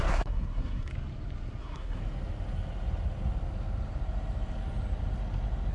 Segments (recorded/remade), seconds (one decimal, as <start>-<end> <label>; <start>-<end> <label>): 0.0-0.9 remade; 0.9-1.6 recorded; 1.6-2.0 remade; 2.0-5.7 recorded